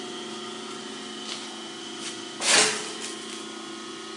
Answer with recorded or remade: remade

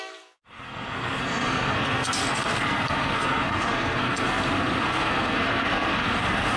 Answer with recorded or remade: remade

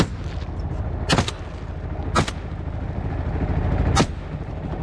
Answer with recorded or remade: recorded